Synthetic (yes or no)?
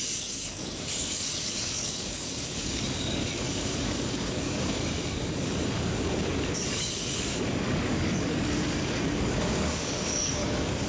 yes